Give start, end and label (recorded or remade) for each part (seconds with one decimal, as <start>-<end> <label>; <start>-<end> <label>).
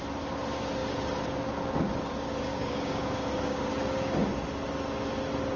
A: 0.0-2.5 recorded; 2.5-3.7 remade; 3.7-5.6 recorded